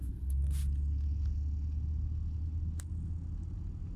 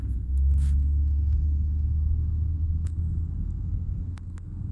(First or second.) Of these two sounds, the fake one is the second